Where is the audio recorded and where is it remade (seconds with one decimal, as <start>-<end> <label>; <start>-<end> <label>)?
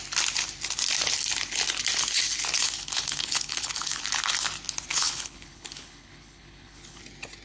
0.0-2.6 recorded; 2.6-4.0 remade; 4.0-4.9 recorded; 4.9-7.0 remade; 7.0-7.4 recorded